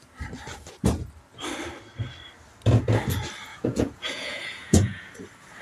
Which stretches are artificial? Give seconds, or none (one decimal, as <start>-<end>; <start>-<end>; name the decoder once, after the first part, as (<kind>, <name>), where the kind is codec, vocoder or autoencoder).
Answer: 3.5-5.1 (vocoder, Vocos)